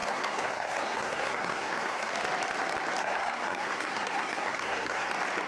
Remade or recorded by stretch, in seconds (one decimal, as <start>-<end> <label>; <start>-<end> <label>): 0.0-2.1 remade; 2.1-3.0 recorded; 3.0-5.1 remade; 5.1-5.5 recorded

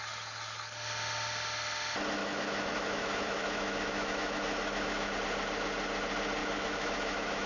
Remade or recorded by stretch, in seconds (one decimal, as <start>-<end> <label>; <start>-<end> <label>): 0.0-2.2 recorded; 2.2-5.1 remade; 5.1-6.4 recorded; 6.4-7.5 remade

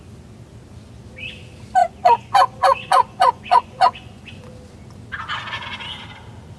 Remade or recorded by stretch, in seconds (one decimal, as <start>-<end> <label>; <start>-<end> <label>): 0.0-1.8 recorded; 1.8-4.5 remade; 4.5-6.6 recorded

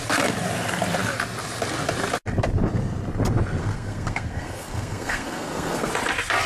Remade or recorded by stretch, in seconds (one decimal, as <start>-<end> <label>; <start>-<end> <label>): 0.0-3.6 recorded; 3.6-5.9 remade; 5.9-6.5 recorded